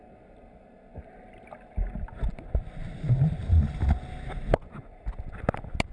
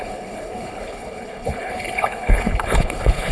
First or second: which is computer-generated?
second